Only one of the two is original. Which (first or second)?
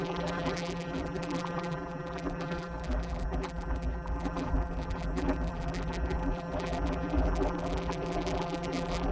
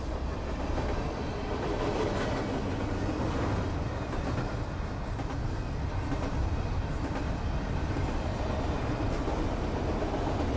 second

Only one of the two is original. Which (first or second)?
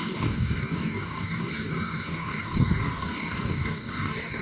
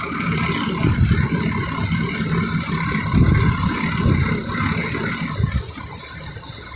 second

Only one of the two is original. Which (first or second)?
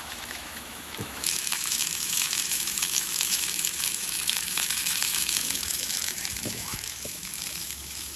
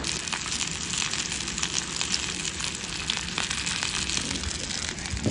second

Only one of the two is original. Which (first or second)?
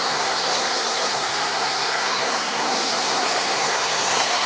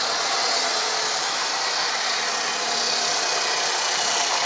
second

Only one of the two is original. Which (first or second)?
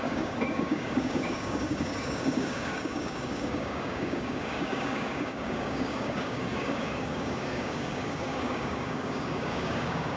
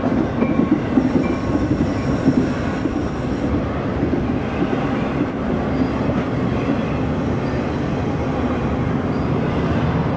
second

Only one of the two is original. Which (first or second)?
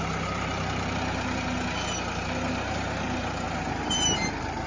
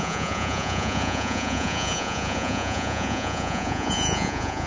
first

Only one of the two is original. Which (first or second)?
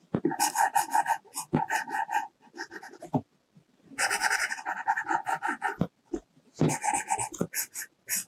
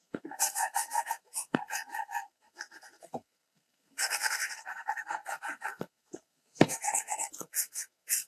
first